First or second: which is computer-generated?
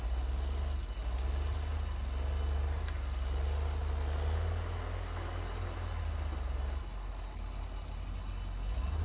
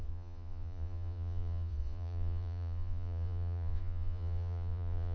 second